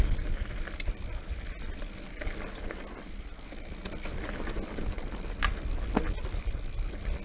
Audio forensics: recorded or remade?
recorded